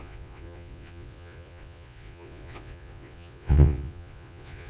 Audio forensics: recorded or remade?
remade